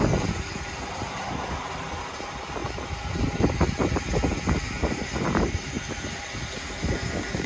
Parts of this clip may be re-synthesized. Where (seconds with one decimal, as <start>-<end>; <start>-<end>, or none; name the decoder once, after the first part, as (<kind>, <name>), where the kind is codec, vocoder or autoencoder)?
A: none